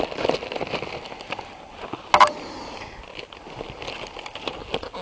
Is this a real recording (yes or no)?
yes